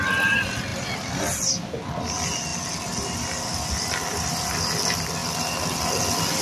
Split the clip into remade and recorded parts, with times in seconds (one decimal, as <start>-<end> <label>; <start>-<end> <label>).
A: 0.0-0.7 recorded; 0.7-1.2 remade; 1.2-6.4 recorded